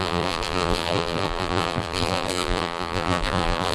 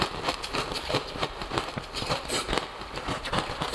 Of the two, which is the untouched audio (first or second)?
second